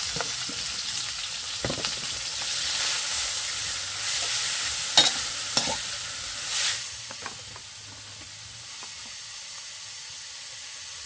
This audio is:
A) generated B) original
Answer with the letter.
B